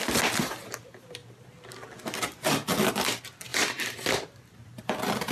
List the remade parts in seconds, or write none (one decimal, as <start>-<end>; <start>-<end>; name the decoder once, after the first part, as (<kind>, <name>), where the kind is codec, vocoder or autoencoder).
3.5-5.3 (vocoder, BigVGAN v2)